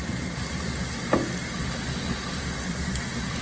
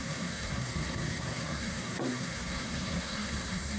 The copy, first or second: second